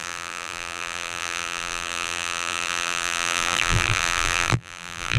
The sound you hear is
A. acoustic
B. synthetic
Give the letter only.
B